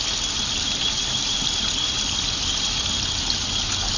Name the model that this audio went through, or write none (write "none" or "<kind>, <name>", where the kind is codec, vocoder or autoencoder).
none